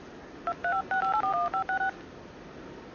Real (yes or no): no